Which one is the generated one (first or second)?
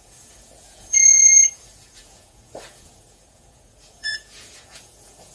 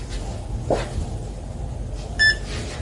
first